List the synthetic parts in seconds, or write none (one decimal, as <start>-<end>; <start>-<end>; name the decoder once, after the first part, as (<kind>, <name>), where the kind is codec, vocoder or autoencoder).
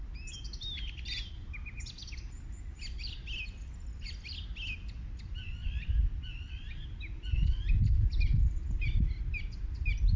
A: none